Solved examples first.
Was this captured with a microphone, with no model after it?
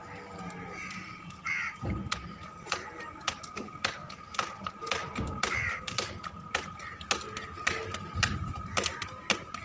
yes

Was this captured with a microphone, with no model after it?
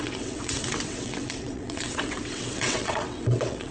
no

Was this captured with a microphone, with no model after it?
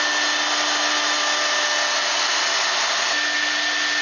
yes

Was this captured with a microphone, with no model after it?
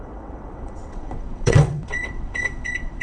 no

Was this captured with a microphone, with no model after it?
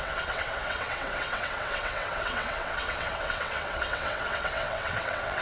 no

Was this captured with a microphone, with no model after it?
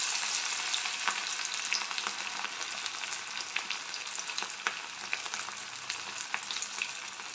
yes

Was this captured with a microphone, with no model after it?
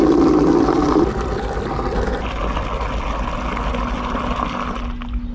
yes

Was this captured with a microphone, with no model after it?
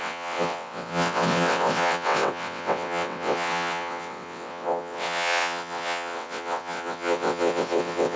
no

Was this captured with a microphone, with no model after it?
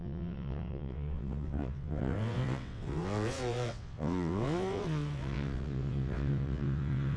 no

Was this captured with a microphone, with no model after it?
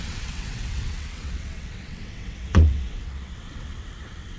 no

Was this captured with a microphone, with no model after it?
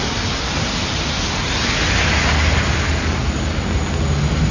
yes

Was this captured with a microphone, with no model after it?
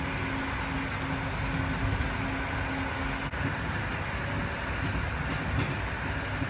yes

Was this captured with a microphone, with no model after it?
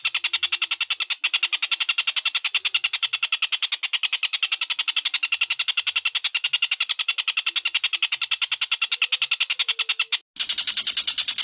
yes